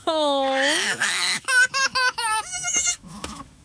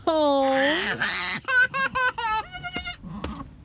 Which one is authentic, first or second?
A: second